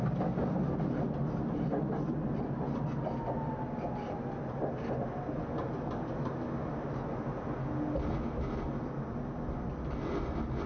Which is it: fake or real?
real